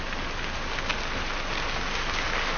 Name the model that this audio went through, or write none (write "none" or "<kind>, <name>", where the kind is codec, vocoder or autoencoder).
none